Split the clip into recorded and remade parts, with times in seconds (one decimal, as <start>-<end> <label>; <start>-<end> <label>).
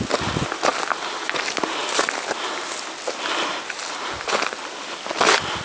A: 0.0-5.6 recorded